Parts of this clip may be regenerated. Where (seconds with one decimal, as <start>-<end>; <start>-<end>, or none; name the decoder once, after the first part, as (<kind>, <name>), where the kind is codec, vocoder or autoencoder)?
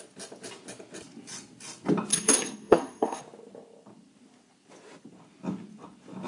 2.1-3.2 (codec, SNAC)